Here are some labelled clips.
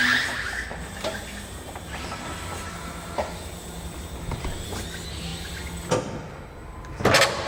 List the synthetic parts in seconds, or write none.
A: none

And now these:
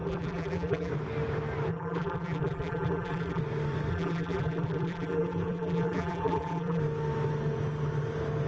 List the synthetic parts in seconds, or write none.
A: 0.0-0.9 (vocoder, BigVGAN v2); 1.7-3.4; 3.9-6.8

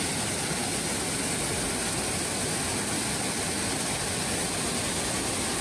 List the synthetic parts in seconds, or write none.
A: none

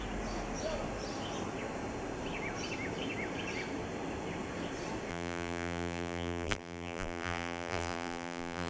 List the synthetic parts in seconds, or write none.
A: 5.1-8.7 (vocoder, BigVGAN v2)

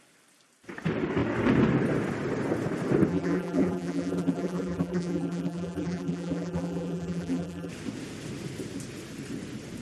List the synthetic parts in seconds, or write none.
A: 3.1-7.7 (vocoder, BigVGAN v2)

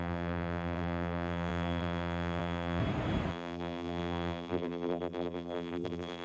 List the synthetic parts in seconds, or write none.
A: 0.0-2.8 (vocoder, BigVGAN v2); 3.3-6.2

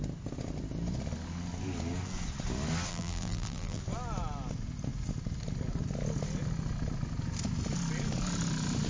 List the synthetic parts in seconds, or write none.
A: 2.9-3.8 (vocoder, BigVGAN v2)

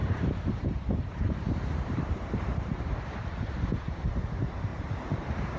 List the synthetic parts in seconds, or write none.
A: 0.0-5.6 (vocoder, BigVGAN v2)